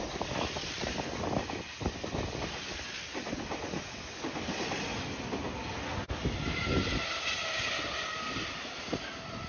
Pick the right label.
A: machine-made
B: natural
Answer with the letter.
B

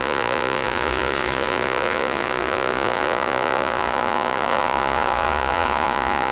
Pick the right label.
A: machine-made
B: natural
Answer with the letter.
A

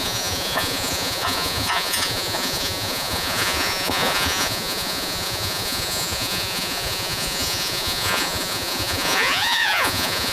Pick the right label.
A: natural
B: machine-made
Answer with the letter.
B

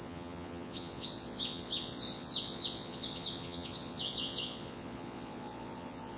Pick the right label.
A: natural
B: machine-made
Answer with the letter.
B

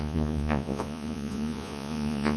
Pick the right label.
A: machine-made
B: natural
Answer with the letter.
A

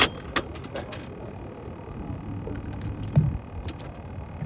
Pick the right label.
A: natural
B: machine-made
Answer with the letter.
A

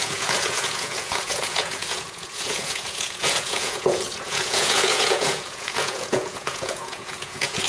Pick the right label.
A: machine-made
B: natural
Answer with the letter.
A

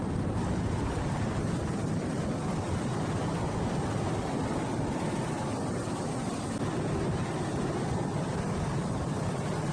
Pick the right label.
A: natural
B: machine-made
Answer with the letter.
A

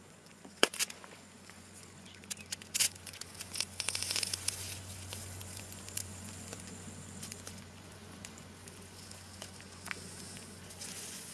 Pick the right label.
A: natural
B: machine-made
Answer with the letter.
B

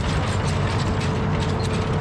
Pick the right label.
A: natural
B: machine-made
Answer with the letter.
A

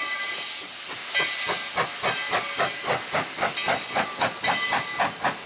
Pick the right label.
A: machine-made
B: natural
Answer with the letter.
B